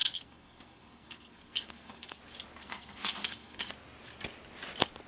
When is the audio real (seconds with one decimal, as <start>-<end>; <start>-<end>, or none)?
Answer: 2.2-2.6; 3.7-5.1